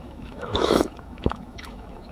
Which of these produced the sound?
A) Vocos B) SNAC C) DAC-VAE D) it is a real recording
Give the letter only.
C